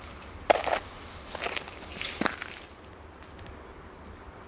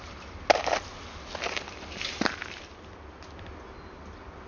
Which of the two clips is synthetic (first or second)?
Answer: first